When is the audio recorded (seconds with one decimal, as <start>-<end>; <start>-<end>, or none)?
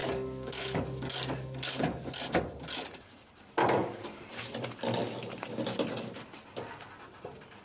2.1-3.6; 4.2-7.6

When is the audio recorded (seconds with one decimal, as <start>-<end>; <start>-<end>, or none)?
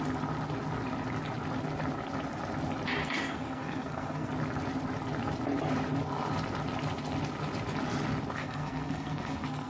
0.0-3.0; 4.3-8.4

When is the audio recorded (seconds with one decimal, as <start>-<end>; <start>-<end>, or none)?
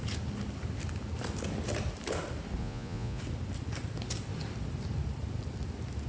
0.0-2.6; 3.2-6.1